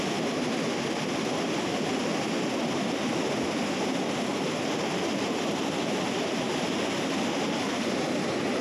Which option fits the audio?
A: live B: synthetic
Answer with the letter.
A